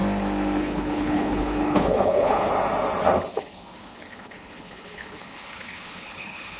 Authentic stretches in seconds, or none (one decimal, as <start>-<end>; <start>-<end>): 0.0-0.6; 2.5-3.3